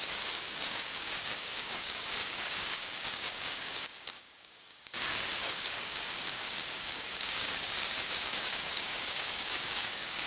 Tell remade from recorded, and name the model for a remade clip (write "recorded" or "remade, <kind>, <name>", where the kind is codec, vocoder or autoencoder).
remade, codec, DAC